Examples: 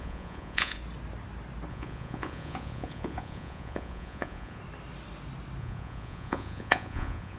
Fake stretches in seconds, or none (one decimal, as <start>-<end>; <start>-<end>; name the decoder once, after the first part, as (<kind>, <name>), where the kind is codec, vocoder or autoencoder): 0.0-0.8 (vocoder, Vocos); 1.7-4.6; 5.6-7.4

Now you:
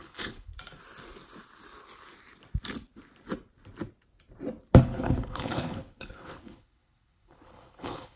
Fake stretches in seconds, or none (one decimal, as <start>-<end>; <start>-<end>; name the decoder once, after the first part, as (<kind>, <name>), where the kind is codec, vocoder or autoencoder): 0.0-0.5 (codec, HILCodec); 4.8-8.2

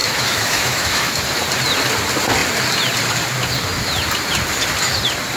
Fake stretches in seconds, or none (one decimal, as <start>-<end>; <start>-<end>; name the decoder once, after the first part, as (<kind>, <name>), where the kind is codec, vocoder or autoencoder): 0.0-1.2 (autoencoder, DAC-VAE)

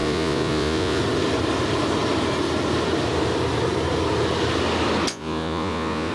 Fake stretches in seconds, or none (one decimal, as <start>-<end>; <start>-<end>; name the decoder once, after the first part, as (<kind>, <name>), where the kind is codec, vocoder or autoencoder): 0.0-1.0 (vocoder, Vocos); 5.1-6.1

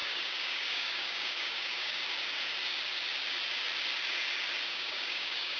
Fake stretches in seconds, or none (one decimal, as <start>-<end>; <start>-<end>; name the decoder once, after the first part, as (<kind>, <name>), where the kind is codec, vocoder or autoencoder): 0.0-2.0 (codec, DAC); 4.7-5.6